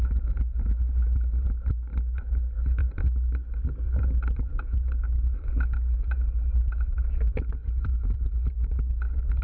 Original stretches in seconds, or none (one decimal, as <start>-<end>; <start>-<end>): 0.0-2.8; 4.0-7.6; 8.5-9.4